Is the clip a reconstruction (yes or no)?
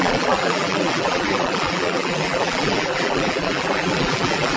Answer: yes